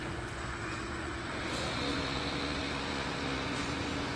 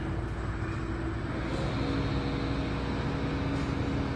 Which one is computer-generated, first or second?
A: first